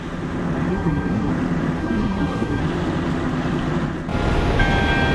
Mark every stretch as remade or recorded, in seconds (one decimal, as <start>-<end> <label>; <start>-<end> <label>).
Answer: 0.0-0.7 recorded; 0.7-1.3 remade; 1.3-1.8 recorded; 1.8-2.6 remade; 2.6-5.1 recorded